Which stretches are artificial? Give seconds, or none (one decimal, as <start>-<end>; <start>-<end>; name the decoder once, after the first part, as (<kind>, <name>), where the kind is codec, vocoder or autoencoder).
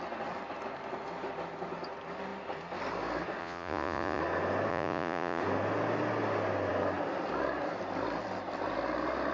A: 3.4-4.2 (vocoder, Vocos); 4.7-5.4